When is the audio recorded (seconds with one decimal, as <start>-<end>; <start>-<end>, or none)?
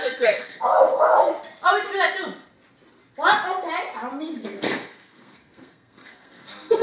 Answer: 1.3-4.2